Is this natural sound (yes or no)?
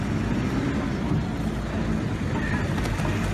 yes